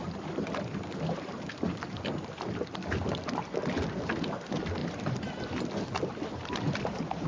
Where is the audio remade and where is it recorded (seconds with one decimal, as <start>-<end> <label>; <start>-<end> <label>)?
0.0-7.3 recorded

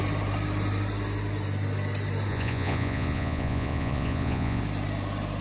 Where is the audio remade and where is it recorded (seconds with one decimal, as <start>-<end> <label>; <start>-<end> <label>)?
0.0-2.3 recorded; 2.3-4.6 remade; 4.6-5.4 recorded